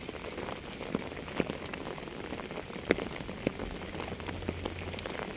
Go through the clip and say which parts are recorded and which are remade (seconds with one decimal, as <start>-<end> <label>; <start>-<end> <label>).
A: 0.0-5.4 recorded